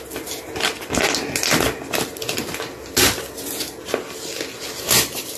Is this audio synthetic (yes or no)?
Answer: no